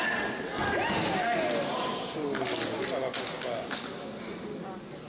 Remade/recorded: recorded